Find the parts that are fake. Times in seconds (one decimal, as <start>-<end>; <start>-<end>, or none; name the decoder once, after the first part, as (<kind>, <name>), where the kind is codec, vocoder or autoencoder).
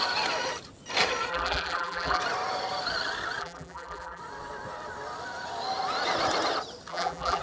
1.3-2.2 (vocoder, BigVGAN v2); 3.4-4.2; 6.9-7.4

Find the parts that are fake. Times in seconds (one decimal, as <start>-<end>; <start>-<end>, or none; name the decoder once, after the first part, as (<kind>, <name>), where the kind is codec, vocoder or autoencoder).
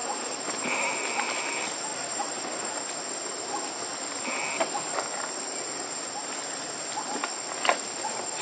0.0-0.9 (vocoder, BigVGAN v2); 1.9-2.7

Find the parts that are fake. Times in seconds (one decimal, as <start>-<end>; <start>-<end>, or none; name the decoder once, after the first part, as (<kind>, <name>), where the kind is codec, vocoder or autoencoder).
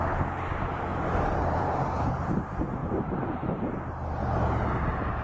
0.9-1.6 (vocoder, BigVGAN v2); 2.8-3.8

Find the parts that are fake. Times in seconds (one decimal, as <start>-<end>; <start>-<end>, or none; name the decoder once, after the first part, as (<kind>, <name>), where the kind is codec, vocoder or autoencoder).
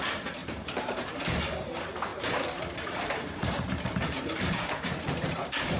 0.4-1.1 (vocoder, BigVGAN v2); 2.1-5.8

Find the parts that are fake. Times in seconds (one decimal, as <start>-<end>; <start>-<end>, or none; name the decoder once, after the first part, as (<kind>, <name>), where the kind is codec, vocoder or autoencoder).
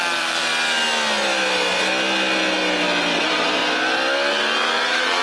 0.0-0.5 (vocoder, BigVGAN v2); 3.2-3.6; 4.3-5.2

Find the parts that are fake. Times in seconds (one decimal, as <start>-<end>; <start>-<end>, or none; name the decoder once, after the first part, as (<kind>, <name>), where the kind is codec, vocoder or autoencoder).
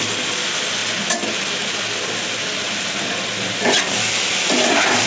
0.0-0.8 (vocoder, BigVGAN v2); 3.8-5.1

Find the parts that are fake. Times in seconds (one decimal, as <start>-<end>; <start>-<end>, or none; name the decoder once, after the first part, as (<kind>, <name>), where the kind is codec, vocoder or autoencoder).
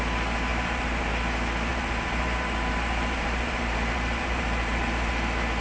0.5-1.1 (vocoder, BigVGAN v2); 1.7-5.1